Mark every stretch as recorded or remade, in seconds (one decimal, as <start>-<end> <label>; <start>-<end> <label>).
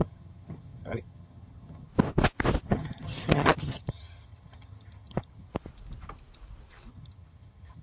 0.0-1.9 remade; 1.9-2.6 recorded; 2.6-5.5 remade; 5.5-6.9 recorded; 6.9-7.8 remade